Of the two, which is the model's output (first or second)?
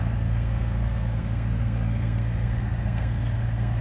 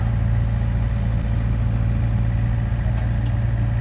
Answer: first